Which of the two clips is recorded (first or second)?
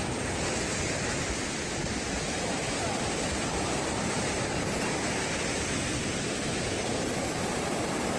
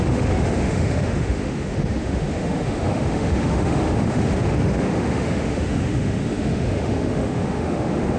first